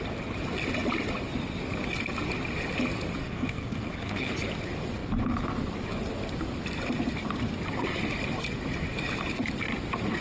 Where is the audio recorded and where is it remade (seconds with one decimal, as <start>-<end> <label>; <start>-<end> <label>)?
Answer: 0.0-3.2 recorded; 3.2-4.3 remade; 4.3-10.2 recorded